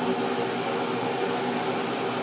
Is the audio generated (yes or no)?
no